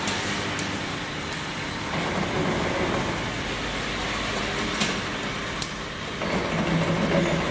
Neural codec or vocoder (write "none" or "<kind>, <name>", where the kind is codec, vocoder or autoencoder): none